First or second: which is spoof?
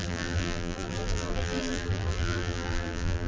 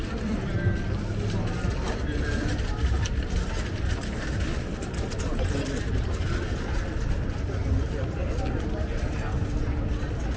first